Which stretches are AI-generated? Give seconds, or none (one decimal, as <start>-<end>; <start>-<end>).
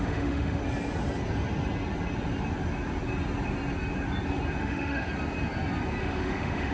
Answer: 0.0-0.6; 4.6-5.1; 6.0-6.7